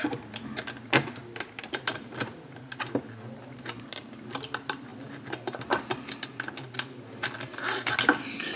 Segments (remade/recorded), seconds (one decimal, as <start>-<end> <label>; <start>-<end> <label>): 0.0-8.6 recorded